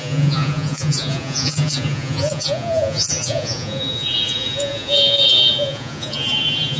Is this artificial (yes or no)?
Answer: yes